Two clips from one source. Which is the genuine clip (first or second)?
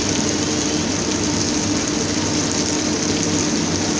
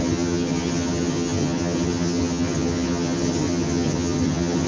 first